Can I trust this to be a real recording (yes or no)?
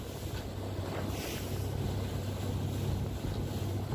yes